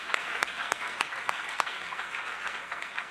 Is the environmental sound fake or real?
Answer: fake